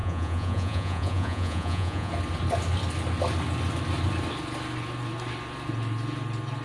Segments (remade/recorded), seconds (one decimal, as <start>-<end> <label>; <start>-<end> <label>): 0.0-2.1 remade; 2.1-6.6 recorded